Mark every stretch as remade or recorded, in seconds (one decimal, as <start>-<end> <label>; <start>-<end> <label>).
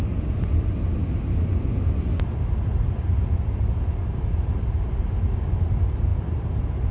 0.0-6.1 recorded; 6.1-6.9 remade